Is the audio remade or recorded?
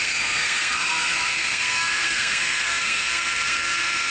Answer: remade